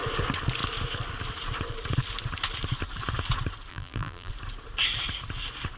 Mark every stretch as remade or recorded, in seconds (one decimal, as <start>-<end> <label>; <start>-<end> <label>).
0.0-3.7 recorded; 3.7-4.3 remade; 4.3-5.8 recorded